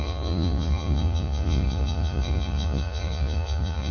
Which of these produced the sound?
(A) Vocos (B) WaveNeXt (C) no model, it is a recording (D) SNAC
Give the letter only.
A